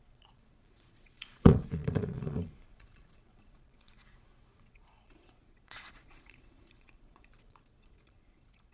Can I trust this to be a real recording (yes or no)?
no